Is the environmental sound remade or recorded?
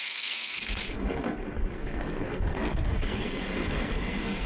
remade